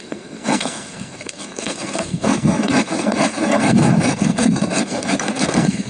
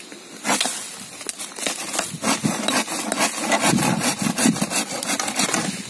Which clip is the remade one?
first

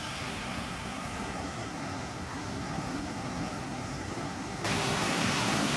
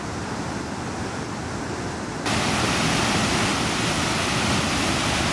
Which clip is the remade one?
first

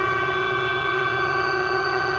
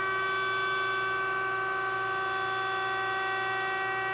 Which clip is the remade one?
first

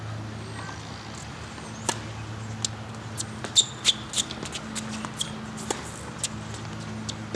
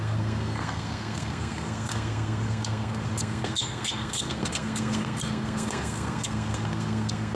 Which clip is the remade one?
second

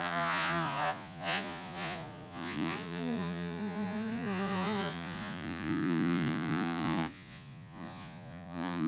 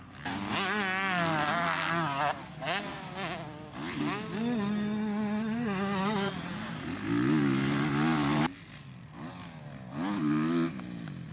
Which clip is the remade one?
first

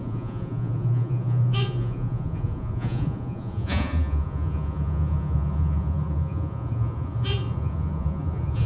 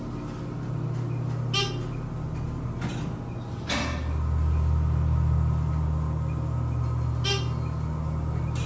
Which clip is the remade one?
first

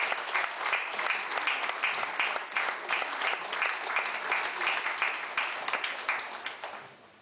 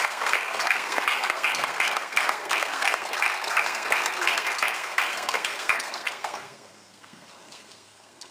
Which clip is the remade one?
second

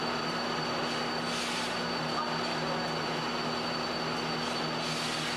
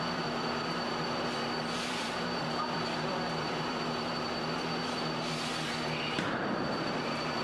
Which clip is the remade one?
second